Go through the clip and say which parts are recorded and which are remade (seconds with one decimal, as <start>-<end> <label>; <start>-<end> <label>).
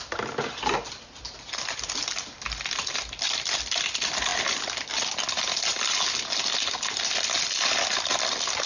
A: 0.0-8.7 recorded